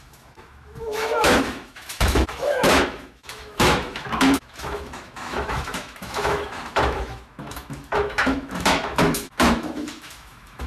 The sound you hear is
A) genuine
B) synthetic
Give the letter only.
B